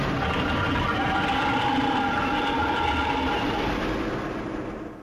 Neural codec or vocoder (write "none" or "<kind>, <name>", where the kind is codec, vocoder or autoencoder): none